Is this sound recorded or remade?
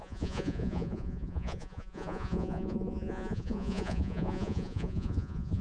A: remade